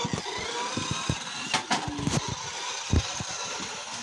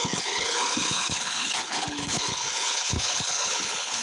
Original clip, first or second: first